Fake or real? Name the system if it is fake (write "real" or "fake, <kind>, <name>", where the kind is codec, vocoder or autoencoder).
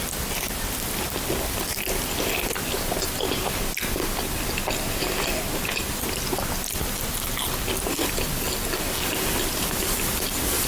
real